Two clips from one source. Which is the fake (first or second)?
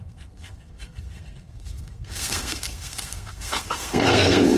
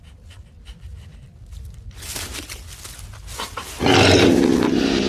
first